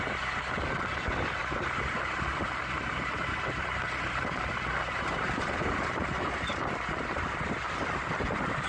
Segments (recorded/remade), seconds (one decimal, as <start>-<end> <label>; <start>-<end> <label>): 0.0-1.4 recorded; 1.4-6.5 remade; 6.5-8.7 recorded